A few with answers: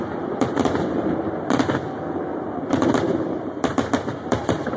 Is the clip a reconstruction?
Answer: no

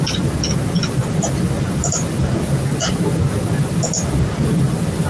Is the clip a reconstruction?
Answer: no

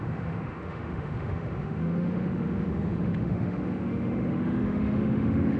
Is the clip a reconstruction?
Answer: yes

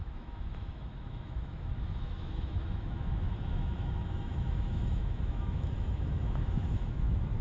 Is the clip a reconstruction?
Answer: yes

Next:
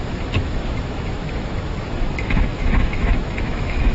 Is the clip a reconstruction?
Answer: yes